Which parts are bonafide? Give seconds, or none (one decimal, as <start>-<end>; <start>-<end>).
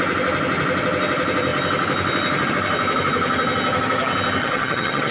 0.0-4.4